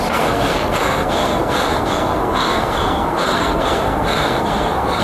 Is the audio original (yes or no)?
no